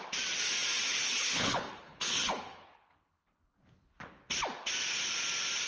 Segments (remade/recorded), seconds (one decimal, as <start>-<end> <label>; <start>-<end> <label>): 0.0-0.9 recorded; 0.9-4.2 remade; 4.2-5.7 recorded